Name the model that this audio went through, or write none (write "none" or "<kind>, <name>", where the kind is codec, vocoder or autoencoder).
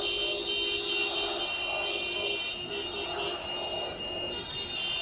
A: none